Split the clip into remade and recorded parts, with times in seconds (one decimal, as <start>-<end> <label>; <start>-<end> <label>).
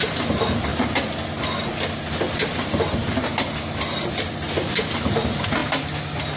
0.0-6.4 recorded